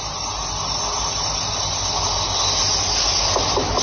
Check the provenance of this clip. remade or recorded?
recorded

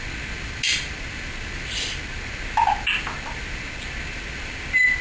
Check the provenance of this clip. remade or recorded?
recorded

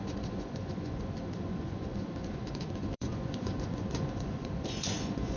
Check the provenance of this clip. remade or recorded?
remade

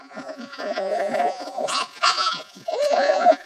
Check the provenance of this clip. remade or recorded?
remade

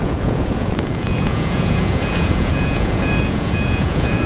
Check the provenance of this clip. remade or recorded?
remade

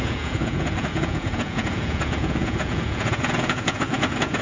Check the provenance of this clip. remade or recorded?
remade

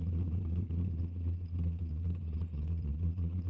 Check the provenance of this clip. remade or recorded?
remade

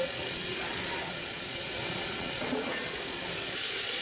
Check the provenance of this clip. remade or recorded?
remade